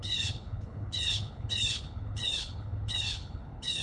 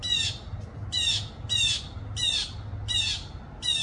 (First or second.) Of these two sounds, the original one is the second